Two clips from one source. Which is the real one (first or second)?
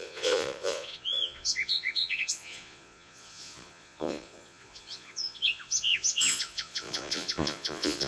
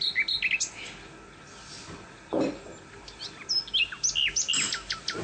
second